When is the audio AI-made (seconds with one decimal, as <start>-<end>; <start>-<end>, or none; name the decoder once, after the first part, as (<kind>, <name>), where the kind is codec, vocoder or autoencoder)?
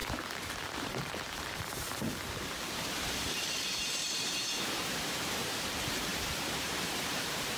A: 0.6-7.6 (vocoder, BigVGAN v2)